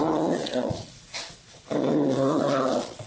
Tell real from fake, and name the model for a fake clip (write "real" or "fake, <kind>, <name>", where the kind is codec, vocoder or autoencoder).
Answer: fake, vocoder, Vocos